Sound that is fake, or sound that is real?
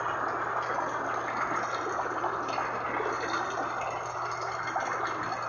real